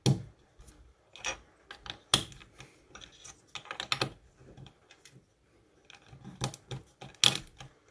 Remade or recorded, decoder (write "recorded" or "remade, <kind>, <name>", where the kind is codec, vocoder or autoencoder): recorded